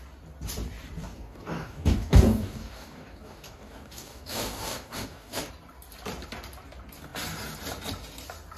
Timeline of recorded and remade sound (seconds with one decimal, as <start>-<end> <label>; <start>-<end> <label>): 0.0-1.0 recorded; 1.0-5.5 remade; 5.5-8.6 recorded